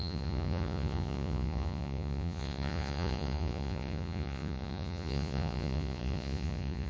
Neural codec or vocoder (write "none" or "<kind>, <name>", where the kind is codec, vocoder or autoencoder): vocoder, Vocos